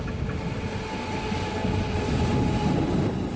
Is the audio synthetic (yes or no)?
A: no